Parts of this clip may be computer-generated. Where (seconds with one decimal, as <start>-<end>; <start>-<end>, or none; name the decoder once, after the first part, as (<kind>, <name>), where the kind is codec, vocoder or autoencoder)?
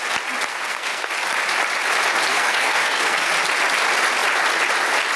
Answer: 0.5-1.1 (codec, SNAC); 2.3-3.3